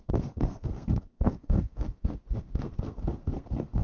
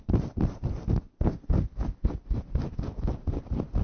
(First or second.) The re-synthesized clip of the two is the first